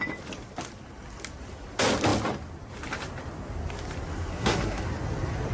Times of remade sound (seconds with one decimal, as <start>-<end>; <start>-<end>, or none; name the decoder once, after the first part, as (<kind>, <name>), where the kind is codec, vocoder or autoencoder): 4.3-4.8 (codec, SNAC)